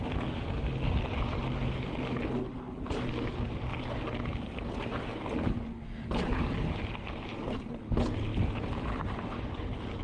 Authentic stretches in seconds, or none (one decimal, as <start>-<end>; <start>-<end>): 0.0-10.0